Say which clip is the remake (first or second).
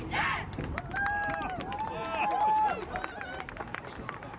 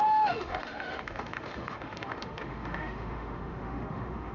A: second